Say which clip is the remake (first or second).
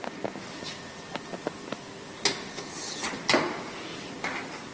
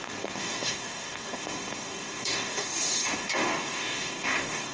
second